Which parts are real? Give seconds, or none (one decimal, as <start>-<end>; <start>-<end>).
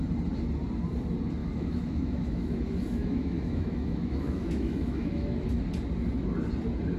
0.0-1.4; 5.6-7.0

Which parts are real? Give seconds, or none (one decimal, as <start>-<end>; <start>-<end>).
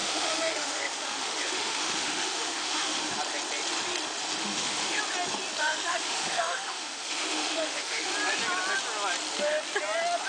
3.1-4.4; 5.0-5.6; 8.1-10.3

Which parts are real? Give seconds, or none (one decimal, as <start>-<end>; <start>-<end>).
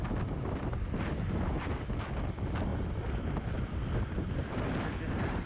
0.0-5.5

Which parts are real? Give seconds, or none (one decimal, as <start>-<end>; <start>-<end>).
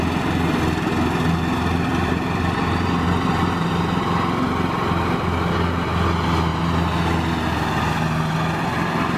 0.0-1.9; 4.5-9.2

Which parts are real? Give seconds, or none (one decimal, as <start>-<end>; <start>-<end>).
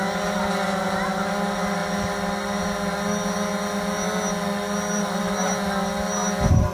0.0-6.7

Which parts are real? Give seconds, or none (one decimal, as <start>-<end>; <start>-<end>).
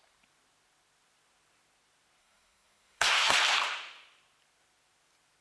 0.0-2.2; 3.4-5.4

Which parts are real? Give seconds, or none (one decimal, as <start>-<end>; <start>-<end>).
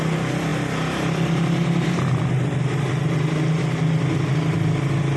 0.0-5.2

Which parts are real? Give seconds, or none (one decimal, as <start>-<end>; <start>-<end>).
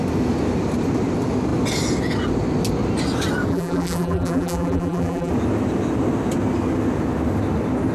0.0-3.5; 5.3-7.9